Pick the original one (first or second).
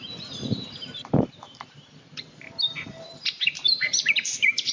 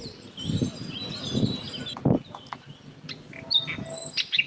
second